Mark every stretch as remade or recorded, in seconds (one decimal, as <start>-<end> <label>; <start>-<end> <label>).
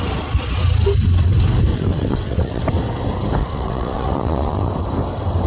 0.0-1.7 recorded; 1.7-2.6 remade; 2.6-3.4 recorded; 3.4-4.7 remade; 4.7-5.5 recorded